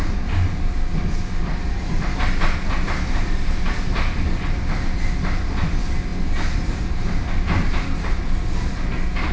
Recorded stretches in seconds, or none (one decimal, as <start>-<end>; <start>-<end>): 0.0-9.3